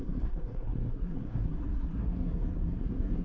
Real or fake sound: fake